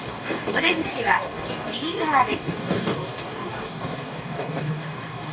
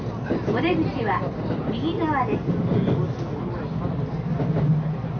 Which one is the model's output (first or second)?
first